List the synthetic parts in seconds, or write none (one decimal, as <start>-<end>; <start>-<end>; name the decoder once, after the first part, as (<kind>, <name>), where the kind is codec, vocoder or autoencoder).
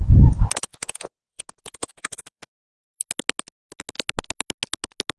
0.7-1.4 (vocoder, Vocos); 1.8-2.5